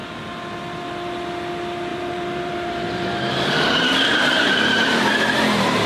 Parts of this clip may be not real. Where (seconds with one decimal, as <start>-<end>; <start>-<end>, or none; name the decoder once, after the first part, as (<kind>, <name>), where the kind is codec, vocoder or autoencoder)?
1.9-5.1 (vocoder, BigVGAN v2)